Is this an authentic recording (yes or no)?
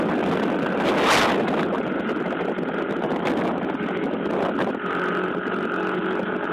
yes